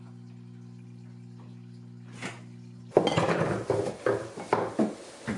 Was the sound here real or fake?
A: real